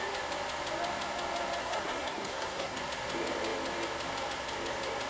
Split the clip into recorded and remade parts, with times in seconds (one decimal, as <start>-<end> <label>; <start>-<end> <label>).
0.0-1.6 recorded; 1.6-2.8 remade; 2.8-5.1 recorded